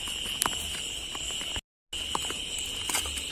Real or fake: real